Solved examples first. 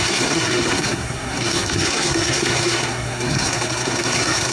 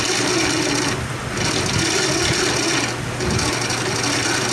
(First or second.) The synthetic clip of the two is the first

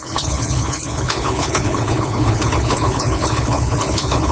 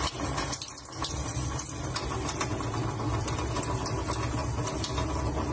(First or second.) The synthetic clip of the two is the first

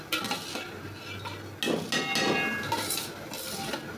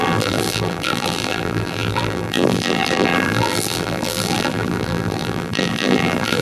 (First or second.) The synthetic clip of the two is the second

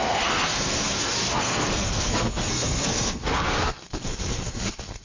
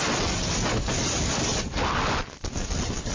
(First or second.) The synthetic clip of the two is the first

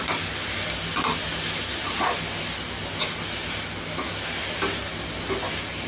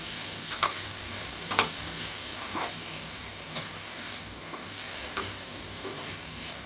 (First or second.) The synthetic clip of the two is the second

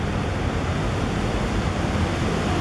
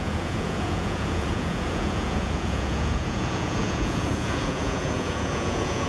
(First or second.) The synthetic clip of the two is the second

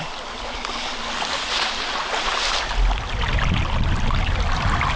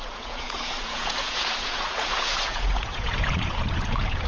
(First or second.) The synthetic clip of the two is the second